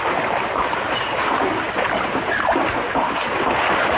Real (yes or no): yes